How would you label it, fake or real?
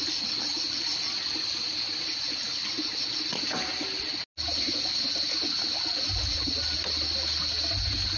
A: real